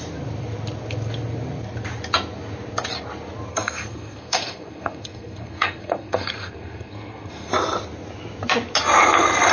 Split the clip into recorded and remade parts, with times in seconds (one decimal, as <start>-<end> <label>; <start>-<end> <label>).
0.0-3.5 recorded; 3.5-7.5 remade; 7.5-9.5 recorded